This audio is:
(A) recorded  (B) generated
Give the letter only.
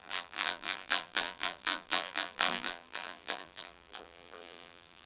B